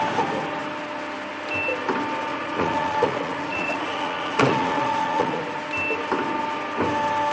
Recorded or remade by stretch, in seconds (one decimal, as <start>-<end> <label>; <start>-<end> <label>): 0.0-2.3 recorded; 2.3-5.4 remade; 5.4-7.3 recorded